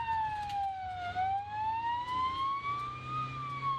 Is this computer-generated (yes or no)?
no